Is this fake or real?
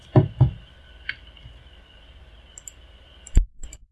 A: real